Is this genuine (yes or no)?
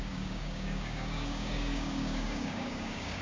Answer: no